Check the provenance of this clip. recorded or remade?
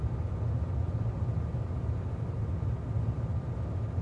recorded